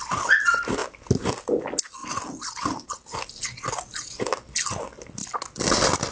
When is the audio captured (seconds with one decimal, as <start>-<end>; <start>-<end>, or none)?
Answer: 0.0-2.0; 3.2-6.1